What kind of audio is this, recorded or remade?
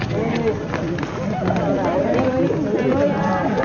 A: recorded